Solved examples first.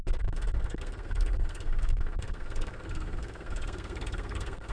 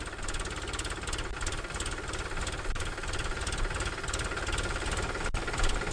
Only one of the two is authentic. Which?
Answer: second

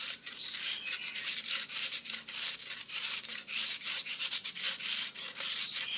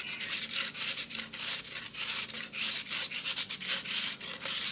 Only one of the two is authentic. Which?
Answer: second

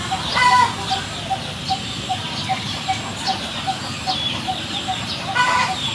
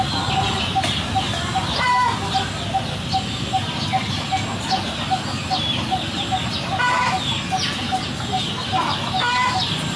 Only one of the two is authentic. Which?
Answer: second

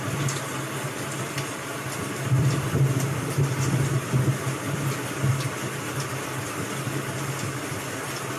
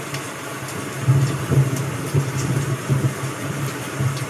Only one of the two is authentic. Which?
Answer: second